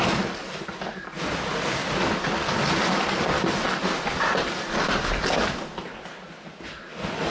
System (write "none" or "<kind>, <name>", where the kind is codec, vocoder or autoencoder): none